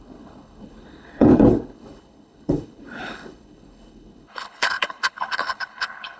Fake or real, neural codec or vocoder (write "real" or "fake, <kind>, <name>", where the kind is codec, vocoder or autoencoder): fake, codec, HILCodec